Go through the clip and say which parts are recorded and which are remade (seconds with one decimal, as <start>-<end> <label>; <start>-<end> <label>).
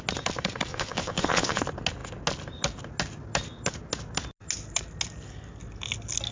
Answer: 0.0-0.7 recorded; 0.7-1.6 remade; 1.6-6.3 recorded